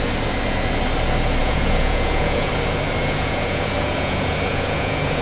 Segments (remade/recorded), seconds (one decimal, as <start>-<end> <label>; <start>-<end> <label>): 0.0-1.4 recorded; 1.4-2.5 remade; 2.5-3.0 recorded; 3.0-5.2 remade